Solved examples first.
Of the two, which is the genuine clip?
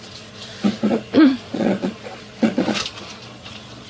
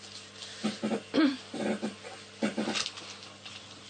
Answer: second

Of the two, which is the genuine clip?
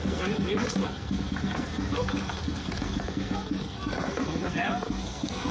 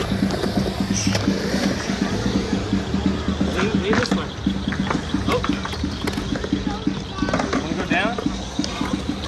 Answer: second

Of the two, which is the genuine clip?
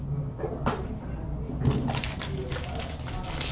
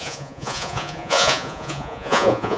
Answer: first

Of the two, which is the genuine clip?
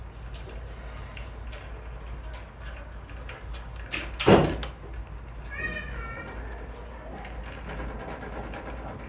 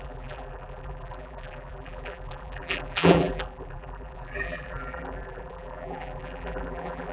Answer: first